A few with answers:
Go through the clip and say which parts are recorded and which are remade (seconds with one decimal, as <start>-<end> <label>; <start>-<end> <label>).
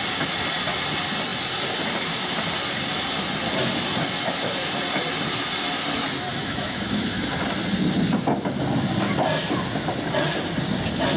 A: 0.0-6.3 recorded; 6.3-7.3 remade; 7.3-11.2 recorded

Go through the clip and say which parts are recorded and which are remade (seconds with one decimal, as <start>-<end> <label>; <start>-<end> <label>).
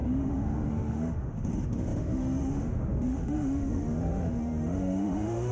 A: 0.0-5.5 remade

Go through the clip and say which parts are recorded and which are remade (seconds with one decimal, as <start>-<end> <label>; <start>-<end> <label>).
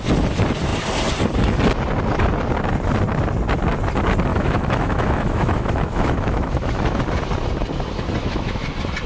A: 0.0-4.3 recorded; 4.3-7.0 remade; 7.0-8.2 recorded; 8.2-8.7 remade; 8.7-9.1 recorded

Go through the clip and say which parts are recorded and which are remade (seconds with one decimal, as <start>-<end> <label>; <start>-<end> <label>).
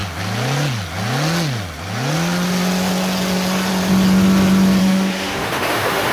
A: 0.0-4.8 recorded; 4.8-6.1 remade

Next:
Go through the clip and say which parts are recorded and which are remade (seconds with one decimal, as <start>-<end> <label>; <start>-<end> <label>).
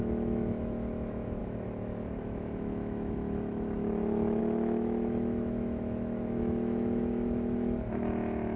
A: 0.0-8.6 remade